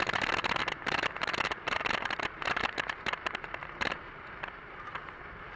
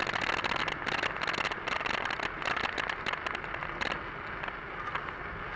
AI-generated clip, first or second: first